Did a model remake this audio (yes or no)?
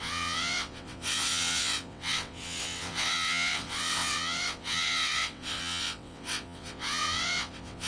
yes